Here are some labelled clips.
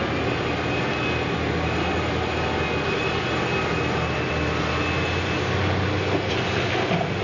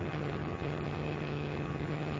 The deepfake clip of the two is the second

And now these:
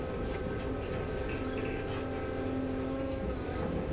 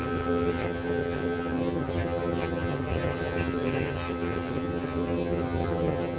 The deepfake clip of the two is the second